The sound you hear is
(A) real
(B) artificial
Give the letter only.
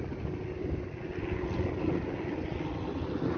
A